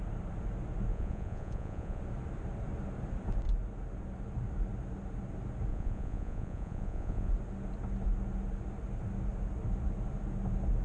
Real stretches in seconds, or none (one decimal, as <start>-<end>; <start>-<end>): 0.0-0.9; 2.0-5.7; 7.3-10.8